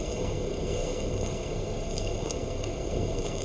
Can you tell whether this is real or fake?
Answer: fake